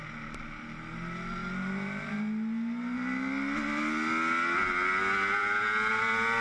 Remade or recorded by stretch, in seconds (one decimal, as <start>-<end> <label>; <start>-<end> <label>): 0.0-6.4 recorded